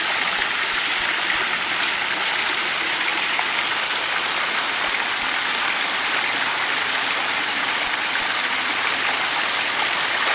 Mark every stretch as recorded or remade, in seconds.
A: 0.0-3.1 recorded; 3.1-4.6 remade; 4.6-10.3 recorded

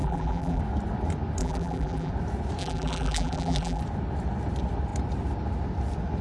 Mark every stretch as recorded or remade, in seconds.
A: 0.0-0.6 remade; 0.6-1.4 recorded; 1.4-2.1 remade; 2.1-2.6 recorded; 2.6-3.8 remade; 3.8-6.2 recorded

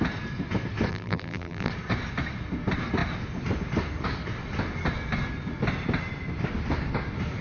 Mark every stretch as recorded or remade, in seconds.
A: 0.0-0.9 recorded; 0.9-1.7 remade; 1.7-7.4 recorded

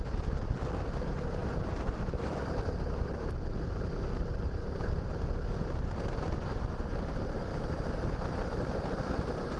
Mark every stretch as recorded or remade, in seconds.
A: 0.0-1.4 recorded; 1.4-3.8 remade; 3.8-4.6 recorded; 4.6-7.0 remade; 7.0-7.5 recorded; 7.5-9.6 remade

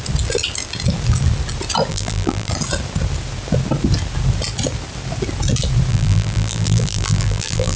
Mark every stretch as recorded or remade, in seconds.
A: 0.0-1.9 recorded; 1.9-2.5 remade; 2.5-5.9 recorded; 5.9-7.8 remade

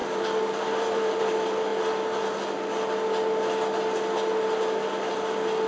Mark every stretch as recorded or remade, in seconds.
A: 0.0-1.2 remade; 1.2-5.7 recorded